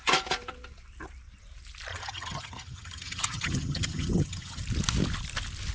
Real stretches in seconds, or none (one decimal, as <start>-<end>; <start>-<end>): 0.0-1.9; 4.6-5.7